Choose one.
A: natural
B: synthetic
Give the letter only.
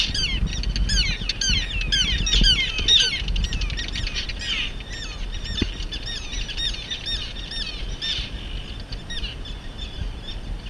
A